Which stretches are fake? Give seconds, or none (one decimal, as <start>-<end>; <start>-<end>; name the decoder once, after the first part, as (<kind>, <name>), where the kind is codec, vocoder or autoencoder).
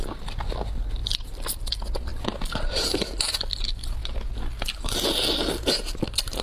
none